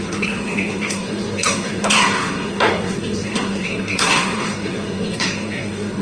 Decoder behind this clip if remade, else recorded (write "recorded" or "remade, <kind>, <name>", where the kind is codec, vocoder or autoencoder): remade, codec, SNAC